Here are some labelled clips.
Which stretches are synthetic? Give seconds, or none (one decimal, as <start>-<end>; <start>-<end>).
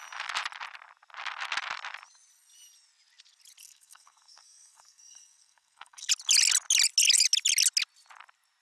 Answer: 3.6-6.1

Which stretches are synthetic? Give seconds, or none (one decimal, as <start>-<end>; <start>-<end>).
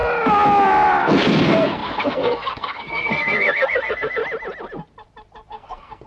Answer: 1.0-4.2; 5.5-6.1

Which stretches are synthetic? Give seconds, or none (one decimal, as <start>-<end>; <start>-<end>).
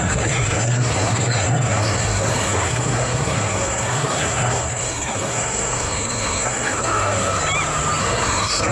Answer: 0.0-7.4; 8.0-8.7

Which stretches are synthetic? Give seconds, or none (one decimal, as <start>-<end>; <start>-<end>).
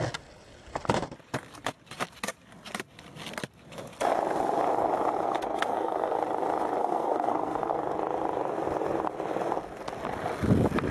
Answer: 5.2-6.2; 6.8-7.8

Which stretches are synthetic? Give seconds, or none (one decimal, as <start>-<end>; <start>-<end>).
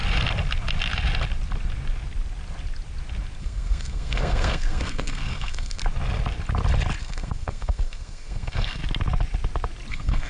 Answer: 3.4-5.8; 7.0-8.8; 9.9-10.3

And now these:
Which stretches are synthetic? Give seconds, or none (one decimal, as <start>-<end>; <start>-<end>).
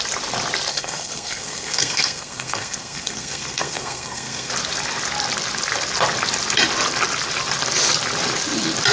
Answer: 0.7-4.5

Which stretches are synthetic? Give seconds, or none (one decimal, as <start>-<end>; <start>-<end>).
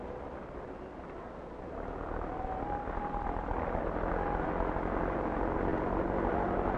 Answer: none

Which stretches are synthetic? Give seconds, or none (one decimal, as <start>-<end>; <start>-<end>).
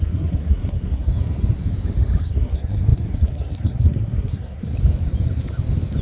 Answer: 0.0-1.1; 2.2-4.7